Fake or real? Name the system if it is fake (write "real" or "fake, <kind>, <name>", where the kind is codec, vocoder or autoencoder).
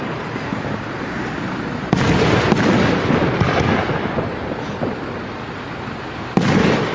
real